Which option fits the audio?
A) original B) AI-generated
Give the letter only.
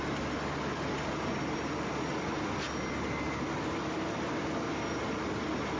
A